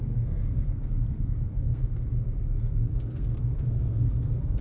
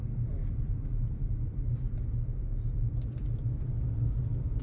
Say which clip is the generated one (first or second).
first